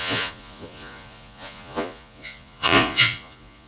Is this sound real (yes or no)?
no